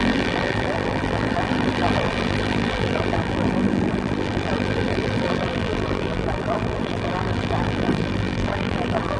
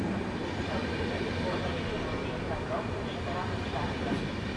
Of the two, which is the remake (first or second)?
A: first